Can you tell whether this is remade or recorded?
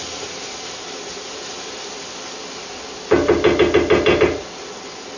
recorded